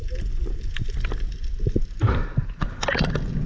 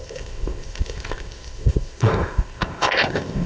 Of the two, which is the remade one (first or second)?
second